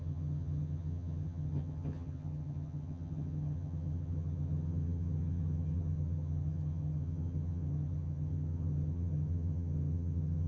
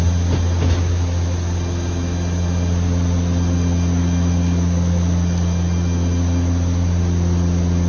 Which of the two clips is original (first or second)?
second